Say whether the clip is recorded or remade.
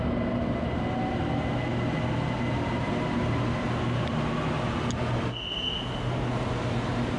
recorded